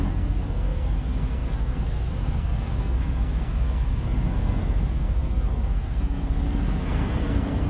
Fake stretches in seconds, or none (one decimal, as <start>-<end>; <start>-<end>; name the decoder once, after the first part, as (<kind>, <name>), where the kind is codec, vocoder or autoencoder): 0.0-7.7 (codec, SNAC)